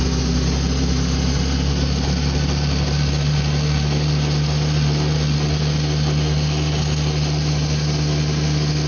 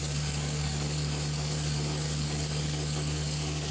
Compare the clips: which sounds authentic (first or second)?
first